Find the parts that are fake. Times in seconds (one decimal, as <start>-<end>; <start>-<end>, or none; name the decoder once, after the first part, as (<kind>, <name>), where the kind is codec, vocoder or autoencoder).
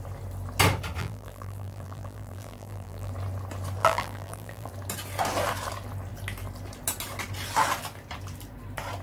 1.0-3.1 (vocoder, BigVGAN v2); 3.8-4.7